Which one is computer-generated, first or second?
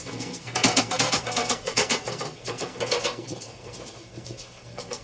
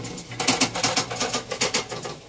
first